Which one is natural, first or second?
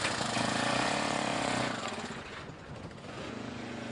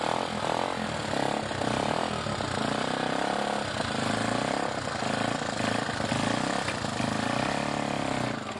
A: second